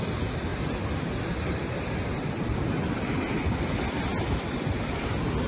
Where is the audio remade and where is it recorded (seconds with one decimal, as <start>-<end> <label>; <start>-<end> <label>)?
0.0-5.5 recorded